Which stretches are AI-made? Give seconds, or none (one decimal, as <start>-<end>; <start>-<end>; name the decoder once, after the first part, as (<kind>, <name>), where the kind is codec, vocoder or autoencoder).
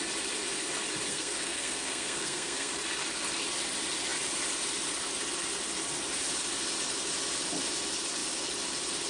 1.1-2.7 (codec, SNAC)